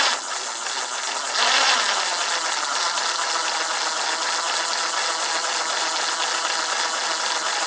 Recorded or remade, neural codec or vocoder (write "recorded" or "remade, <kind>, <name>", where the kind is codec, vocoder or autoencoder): recorded